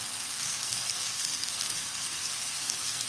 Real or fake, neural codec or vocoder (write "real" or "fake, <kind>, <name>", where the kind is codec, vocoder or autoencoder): fake, codec, SNAC